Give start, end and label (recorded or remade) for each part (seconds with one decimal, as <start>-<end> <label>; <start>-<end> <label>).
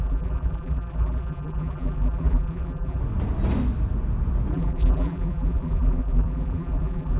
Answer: 0.0-3.0 remade; 3.0-4.5 recorded; 4.5-7.2 remade